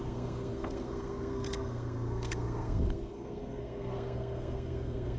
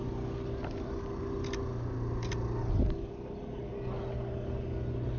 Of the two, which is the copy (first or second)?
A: first